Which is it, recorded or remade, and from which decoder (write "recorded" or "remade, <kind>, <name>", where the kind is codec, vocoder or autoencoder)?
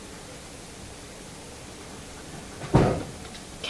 remade, vocoder, BigVGAN v2